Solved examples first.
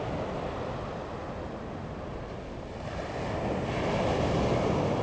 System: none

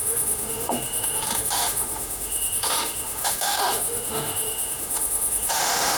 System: autoencoder, DAC-VAE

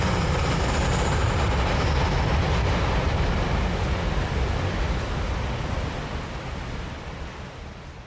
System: none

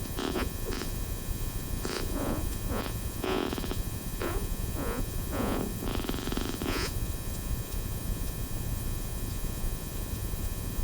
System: vocoder, Vocos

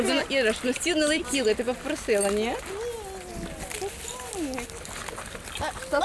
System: none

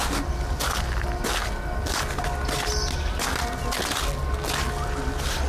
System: none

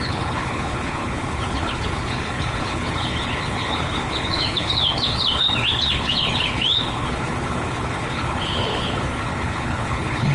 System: codec, HILCodec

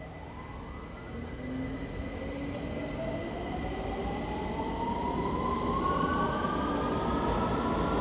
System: none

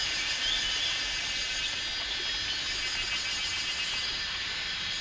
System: none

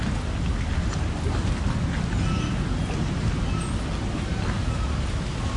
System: none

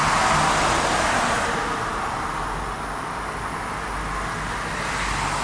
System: none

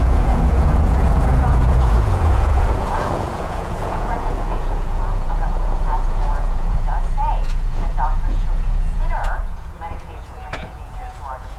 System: vocoder, Vocos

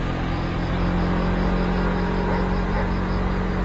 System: none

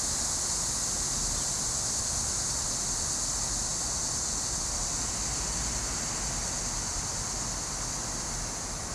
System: none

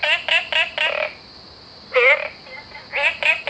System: none